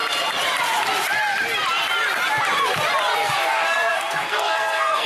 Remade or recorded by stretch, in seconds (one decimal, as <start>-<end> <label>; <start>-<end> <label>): 0.0-3.1 recorded; 3.1-5.1 remade